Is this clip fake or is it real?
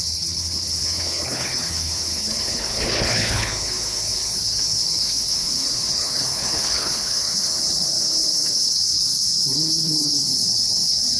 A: fake